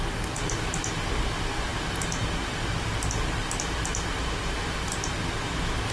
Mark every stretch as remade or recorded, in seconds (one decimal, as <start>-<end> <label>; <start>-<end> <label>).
0.0-5.9 recorded